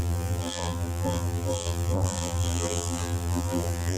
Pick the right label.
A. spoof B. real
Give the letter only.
A